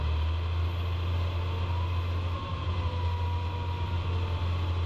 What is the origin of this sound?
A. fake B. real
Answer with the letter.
B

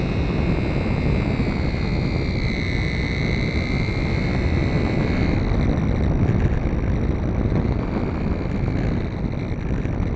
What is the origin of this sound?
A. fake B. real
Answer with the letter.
B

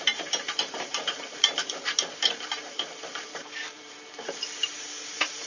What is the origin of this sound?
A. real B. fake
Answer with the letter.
B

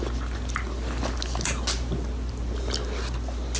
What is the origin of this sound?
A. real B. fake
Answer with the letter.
A